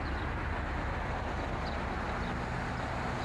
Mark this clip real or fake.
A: real